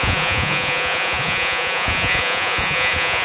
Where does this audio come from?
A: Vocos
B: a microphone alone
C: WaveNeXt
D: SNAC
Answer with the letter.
A